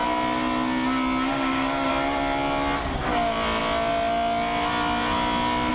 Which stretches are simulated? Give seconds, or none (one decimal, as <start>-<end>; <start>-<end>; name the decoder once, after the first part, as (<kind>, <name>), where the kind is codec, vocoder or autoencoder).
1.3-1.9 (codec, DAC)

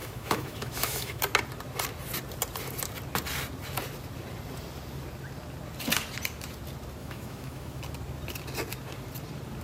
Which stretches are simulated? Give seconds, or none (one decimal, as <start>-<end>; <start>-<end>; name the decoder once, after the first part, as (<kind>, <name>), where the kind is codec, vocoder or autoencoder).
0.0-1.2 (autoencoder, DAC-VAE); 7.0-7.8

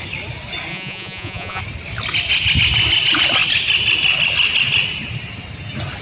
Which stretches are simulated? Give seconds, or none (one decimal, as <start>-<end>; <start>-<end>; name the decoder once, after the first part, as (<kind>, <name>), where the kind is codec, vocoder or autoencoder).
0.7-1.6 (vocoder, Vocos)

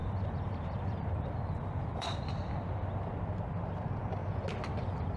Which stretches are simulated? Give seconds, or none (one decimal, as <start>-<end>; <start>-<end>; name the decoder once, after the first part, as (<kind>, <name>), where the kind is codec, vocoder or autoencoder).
0.0-3.1 (vocoder, BigVGAN v2)

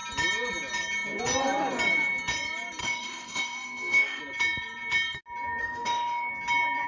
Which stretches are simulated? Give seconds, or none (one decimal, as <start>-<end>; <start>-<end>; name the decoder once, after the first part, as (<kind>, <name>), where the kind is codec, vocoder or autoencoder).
2.8-4.2 (autoencoder, DAC-VAE); 5.6-6.3

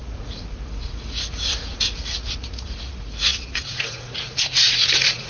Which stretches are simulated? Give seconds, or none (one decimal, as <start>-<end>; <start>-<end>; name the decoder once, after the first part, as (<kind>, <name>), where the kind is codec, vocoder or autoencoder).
0.0-5.3 (vocoder, Vocos)